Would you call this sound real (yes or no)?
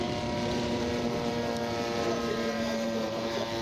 no